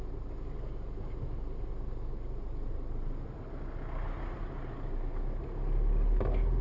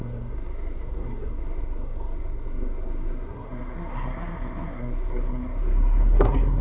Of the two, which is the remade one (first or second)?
second